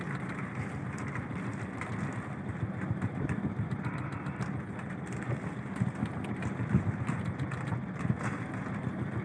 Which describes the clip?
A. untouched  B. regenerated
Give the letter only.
A